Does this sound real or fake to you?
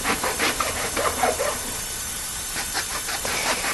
fake